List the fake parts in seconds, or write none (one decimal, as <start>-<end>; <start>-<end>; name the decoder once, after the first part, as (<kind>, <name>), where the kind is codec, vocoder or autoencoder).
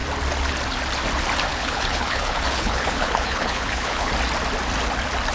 1.5-4.1 (codec, HILCodec)